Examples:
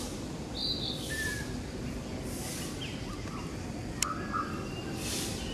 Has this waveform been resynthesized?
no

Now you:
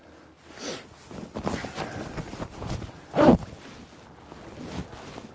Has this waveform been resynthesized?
no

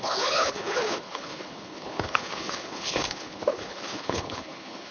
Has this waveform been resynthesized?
yes